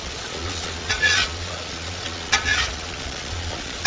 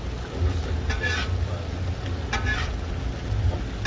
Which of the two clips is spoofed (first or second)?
first